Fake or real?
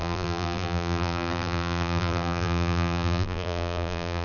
fake